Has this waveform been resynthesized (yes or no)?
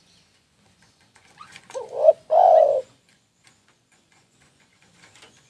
yes